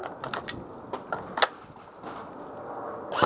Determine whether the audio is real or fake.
real